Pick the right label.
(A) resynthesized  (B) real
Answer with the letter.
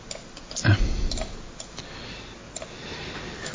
B